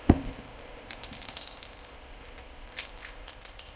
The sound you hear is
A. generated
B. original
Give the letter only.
A